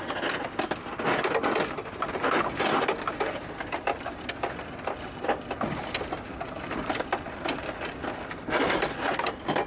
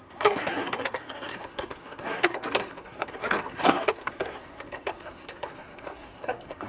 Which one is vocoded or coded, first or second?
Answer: second